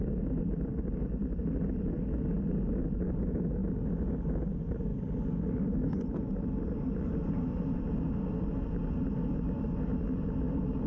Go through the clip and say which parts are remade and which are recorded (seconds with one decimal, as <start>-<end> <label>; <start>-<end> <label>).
0.0-10.9 recorded